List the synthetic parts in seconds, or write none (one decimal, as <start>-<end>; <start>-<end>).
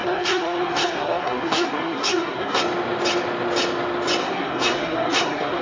0.0-2.6; 4.2-5.6